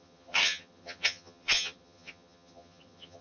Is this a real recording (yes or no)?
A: no